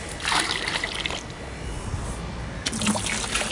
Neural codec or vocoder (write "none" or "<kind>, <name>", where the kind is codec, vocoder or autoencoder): none